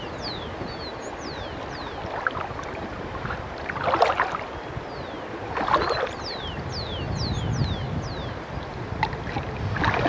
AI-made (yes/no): no